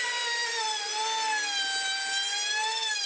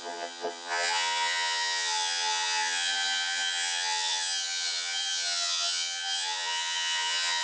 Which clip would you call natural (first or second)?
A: first